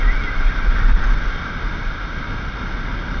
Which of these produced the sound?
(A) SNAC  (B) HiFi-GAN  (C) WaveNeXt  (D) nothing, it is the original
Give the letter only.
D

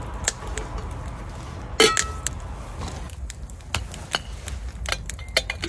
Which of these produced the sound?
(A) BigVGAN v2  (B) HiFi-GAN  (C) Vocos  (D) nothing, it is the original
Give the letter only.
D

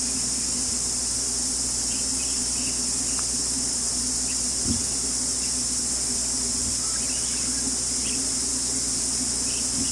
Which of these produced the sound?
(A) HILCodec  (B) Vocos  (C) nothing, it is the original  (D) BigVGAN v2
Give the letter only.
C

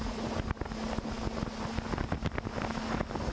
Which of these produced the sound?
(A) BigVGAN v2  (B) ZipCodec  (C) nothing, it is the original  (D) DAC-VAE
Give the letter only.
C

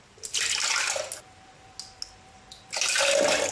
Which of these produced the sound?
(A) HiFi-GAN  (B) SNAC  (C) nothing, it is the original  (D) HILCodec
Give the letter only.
C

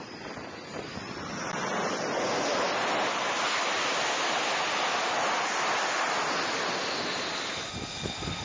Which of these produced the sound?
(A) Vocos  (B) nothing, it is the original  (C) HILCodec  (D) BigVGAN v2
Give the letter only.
B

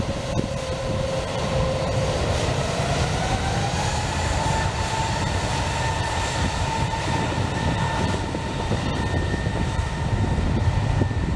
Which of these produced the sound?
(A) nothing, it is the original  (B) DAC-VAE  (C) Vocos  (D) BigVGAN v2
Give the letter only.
D